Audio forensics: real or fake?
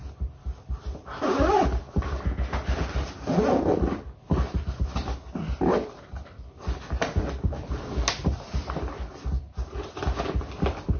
real